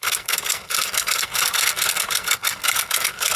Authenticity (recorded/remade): remade